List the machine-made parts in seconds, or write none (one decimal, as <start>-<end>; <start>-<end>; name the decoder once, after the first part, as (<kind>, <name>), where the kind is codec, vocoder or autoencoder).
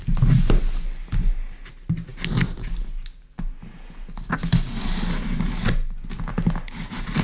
none